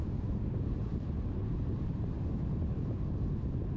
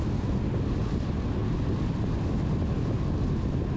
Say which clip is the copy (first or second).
first